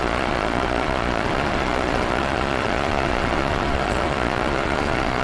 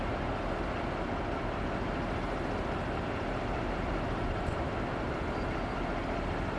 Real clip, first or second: second